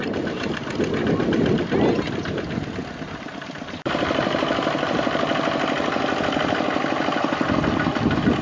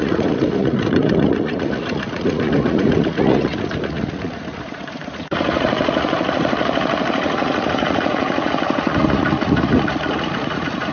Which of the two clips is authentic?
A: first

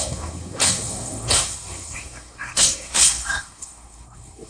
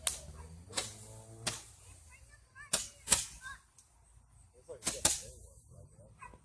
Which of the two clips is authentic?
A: second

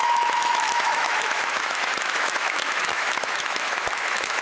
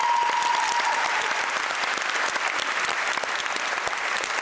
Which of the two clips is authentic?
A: second